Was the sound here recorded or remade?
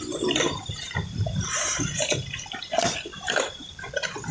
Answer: recorded